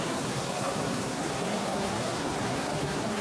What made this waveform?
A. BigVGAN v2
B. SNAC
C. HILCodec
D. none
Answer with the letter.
B